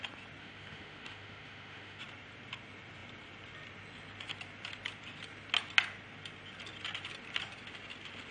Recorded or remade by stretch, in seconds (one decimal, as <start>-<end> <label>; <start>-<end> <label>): 0.0-0.4 recorded; 0.4-2.0 remade; 2.0-8.3 recorded